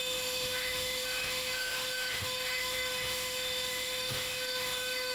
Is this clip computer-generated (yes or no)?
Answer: yes